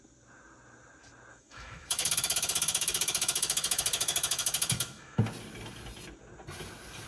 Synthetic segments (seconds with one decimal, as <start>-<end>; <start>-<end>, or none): 1.3-5.2